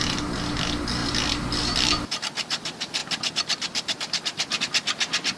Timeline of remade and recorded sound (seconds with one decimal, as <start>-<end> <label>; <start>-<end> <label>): 0.0-1.0 recorded; 1.0-2.2 remade; 2.2-3.0 recorded; 3.0-4.6 remade; 4.6-5.4 recorded